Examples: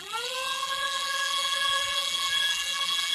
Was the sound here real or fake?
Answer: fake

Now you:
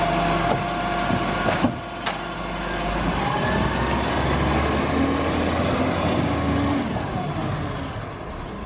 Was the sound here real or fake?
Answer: real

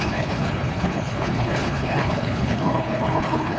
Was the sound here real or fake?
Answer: fake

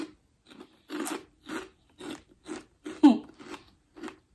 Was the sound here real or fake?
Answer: real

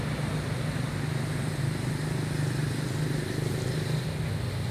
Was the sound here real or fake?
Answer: real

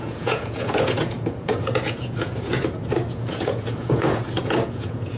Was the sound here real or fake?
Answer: fake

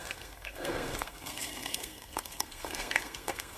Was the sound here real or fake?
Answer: fake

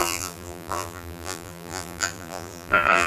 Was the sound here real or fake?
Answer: fake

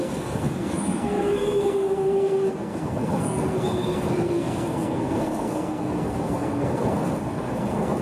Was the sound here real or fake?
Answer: fake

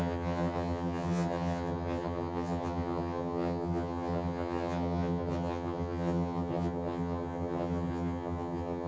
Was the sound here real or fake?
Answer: fake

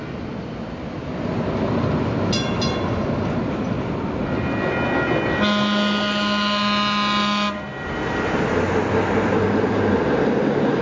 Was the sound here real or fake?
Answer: real